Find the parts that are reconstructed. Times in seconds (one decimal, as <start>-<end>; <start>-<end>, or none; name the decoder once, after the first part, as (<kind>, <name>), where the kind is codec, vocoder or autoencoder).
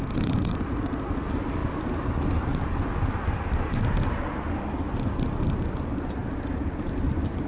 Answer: none